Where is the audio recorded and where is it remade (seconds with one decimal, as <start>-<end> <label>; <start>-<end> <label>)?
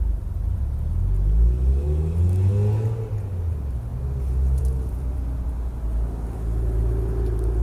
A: 0.0-7.6 recorded